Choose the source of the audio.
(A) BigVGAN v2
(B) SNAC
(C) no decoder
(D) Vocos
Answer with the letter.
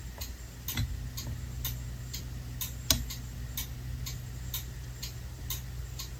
C